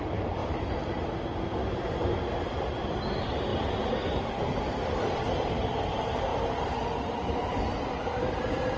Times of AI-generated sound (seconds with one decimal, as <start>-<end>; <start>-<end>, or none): 0.0-0.4; 2.9-8.8